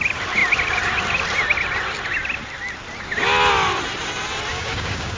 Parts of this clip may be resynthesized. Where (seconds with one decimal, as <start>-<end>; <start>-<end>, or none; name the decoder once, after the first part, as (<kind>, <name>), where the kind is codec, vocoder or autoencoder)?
4.5-5.2 (codec, DAC)